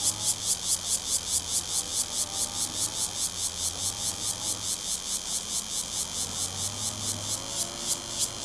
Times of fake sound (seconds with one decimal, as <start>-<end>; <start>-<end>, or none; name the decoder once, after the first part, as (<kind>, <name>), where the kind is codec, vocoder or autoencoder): none